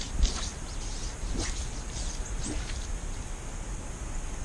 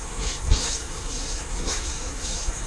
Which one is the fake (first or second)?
second